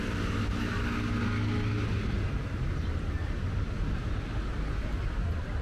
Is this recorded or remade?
recorded